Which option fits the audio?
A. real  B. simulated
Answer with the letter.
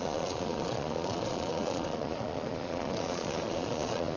B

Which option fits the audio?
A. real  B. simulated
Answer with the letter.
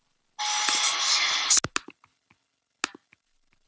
A